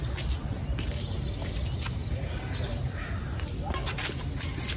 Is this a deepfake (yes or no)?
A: no